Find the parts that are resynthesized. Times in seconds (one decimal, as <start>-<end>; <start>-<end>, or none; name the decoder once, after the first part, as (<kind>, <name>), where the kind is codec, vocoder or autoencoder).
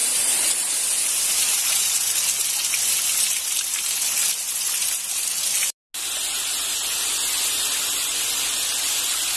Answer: 0.0-1.9 (vocoder, BigVGAN v2)